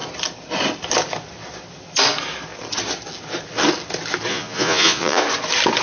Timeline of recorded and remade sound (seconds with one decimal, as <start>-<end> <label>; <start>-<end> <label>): 0.0-4.3 recorded; 4.3-5.2 remade; 5.2-5.8 recorded